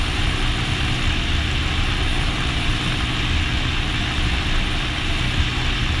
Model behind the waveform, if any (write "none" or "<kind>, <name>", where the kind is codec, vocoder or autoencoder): none